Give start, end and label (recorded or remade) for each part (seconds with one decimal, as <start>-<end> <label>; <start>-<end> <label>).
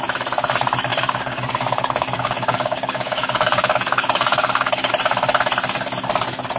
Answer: 0.0-0.9 recorded; 0.9-4.9 remade; 4.9-6.6 recorded